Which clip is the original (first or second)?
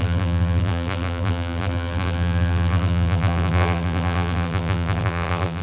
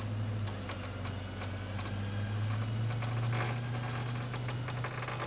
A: second